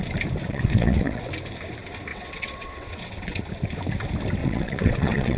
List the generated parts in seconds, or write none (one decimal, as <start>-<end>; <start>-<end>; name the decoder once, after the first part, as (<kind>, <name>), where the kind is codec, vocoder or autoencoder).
0.4-1.3 (vocoder, WaveNeXt); 2.1-3.4; 4.4-5.4